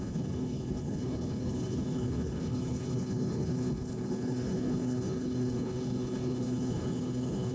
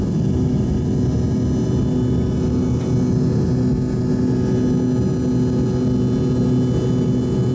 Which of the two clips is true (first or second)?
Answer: second